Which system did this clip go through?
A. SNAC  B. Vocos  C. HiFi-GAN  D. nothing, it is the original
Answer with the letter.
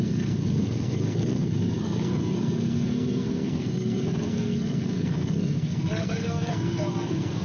A